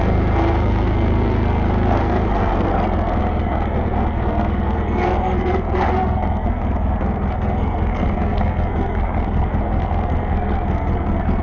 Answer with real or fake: fake